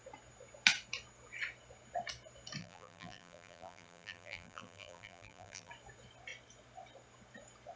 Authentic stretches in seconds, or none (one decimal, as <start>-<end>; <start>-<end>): 0.0-2.6; 5.7-7.8